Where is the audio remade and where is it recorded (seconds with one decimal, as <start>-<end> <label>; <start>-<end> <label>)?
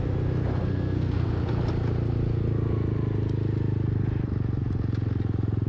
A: 0.0-0.7 recorded; 0.7-1.3 remade; 1.3-5.7 recorded